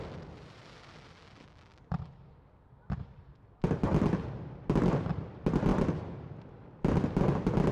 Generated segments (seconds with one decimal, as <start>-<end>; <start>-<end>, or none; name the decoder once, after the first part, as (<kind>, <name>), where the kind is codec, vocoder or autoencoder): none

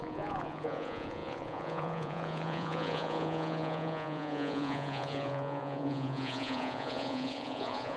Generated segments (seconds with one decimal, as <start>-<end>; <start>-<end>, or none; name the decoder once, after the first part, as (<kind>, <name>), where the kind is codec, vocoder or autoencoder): 0.0-8.0 (vocoder, Vocos)

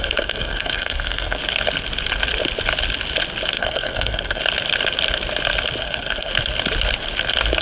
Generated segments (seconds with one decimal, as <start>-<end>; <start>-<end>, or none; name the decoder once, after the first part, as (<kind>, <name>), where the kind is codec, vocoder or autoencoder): 0.0-1.4 (codec, SNAC); 3.5-4.4; 5.8-6.3